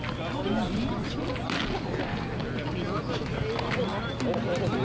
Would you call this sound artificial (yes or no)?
no